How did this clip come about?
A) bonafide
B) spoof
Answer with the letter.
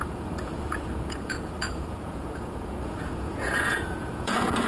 B